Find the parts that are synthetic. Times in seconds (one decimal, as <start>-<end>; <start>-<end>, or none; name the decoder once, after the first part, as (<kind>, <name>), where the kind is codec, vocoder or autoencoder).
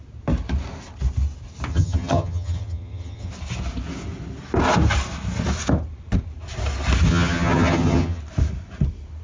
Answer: 1.7-3.3 (vocoder, HiFi-GAN); 7.1-8.2